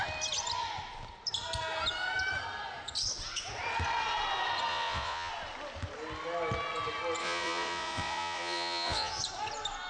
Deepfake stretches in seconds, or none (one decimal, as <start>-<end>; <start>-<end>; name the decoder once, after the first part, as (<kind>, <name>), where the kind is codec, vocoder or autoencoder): 4.7-5.3 (vocoder, Vocos); 7.2-9.2

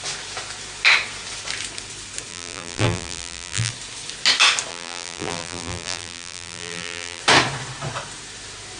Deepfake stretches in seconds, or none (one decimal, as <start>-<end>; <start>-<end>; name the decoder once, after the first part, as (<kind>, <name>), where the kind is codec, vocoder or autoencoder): 2.3-3.7 (vocoder, BigVGAN v2); 4.7-7.2